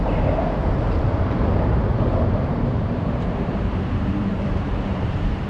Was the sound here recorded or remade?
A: remade